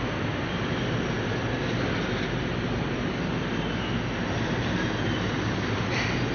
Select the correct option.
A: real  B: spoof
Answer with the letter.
A